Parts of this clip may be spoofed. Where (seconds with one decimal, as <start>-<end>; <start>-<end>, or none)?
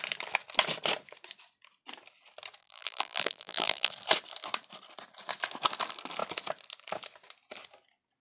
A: 2.6-3.9